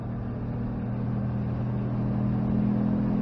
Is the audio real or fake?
real